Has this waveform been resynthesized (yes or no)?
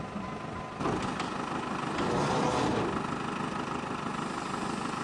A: no